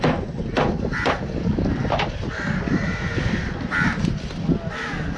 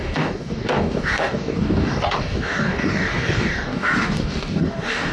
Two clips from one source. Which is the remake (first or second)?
second